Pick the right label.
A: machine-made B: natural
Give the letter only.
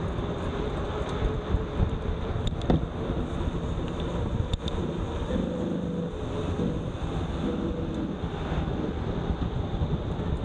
B